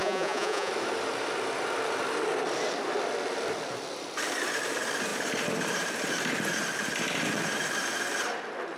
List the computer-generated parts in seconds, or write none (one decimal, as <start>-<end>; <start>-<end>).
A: 0.0-0.7